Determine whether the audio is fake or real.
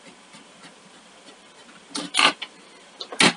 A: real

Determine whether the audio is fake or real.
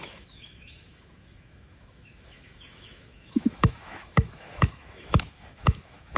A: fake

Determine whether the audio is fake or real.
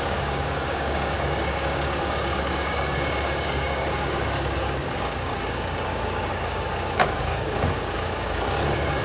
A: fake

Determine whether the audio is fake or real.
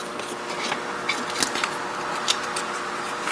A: real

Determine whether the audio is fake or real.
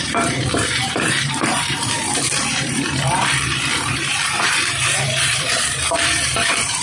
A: fake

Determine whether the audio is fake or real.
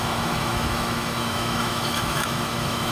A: fake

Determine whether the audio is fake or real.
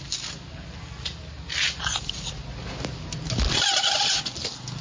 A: real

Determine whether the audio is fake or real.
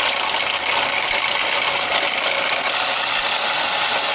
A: real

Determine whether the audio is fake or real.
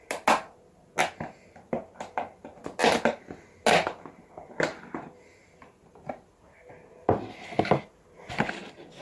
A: real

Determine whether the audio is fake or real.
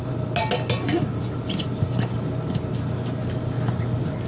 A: real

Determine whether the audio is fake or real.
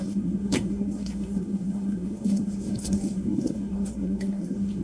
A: fake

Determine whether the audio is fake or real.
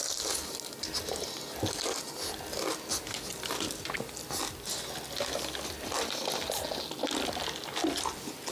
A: real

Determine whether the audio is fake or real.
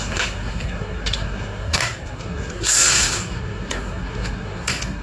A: fake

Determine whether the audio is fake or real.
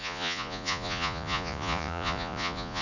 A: fake